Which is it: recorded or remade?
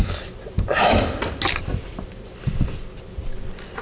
recorded